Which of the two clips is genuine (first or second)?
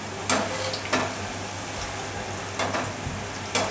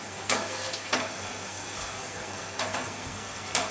first